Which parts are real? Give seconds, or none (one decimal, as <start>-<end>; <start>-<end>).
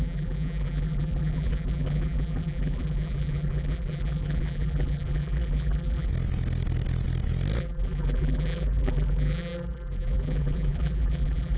6.1-7.6